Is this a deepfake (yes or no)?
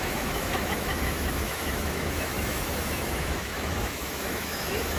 yes